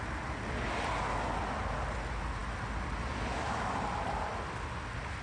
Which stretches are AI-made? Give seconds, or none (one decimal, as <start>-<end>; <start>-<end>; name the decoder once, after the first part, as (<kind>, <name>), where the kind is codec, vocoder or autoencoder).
none